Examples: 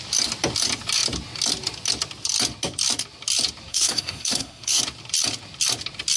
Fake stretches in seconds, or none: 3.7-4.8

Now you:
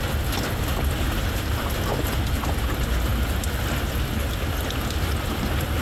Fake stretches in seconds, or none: none